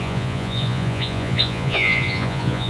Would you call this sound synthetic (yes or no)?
yes